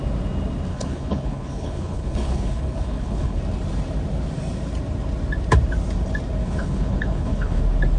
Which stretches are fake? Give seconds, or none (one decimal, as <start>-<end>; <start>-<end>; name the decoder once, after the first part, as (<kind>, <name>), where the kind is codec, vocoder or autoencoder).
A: 0.7-3.4 (codec, HILCodec); 6.4-7.6